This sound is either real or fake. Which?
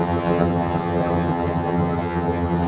fake